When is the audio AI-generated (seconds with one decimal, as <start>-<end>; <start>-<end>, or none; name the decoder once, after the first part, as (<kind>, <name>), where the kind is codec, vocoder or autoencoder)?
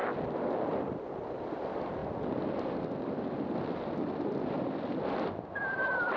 none